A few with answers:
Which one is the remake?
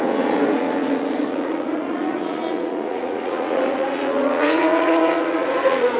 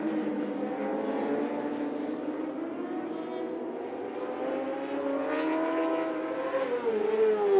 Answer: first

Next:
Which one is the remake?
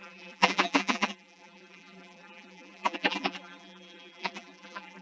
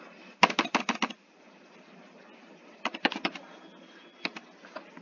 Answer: first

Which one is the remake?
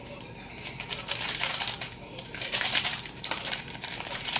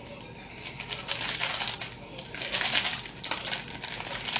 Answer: first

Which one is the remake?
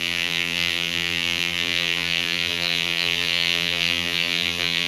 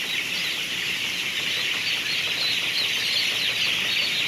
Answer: first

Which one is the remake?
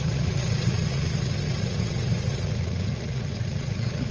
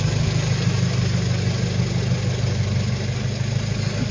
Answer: first